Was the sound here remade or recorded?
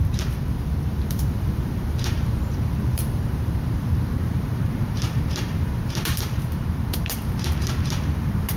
remade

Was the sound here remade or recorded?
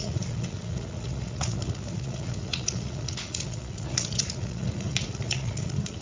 remade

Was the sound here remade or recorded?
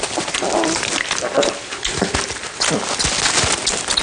recorded